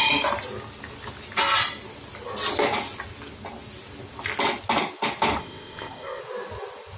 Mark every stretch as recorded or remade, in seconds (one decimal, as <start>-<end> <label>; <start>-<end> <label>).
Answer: 0.0-5.4 recorded; 5.4-6.2 remade; 6.2-7.0 recorded